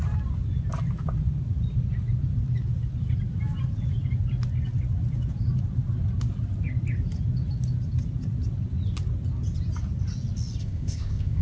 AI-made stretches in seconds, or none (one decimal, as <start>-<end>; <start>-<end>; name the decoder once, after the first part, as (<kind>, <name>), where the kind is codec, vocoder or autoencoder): 10.6-11.4 (codec, ZipCodec)